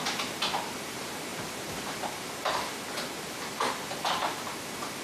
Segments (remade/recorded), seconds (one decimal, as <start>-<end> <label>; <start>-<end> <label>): 0.0-5.0 recorded